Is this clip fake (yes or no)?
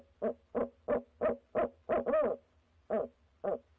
no